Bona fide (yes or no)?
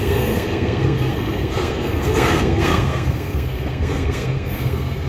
no